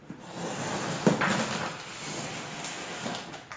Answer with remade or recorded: recorded